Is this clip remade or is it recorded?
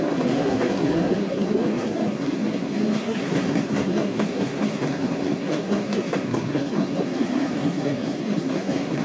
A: remade